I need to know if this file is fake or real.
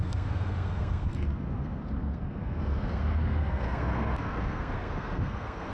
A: fake